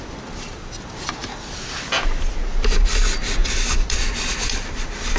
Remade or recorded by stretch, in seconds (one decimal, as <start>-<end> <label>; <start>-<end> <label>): 0.0-1.2 remade; 1.2-3.4 recorded; 3.4-5.2 remade